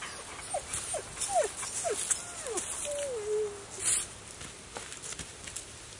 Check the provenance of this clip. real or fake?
real